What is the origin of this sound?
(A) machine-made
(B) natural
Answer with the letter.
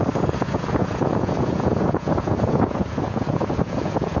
A